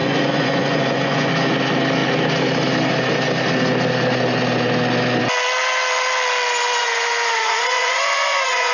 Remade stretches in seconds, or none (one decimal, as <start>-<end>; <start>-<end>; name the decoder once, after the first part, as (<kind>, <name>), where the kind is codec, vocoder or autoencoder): 0.0-1.3 (vocoder, Vocos); 6.8-8.7